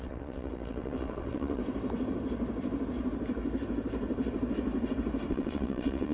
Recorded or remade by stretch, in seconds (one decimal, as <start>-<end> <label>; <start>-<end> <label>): 0.0-1.6 remade; 1.6-5.3 recorded; 5.3-6.1 remade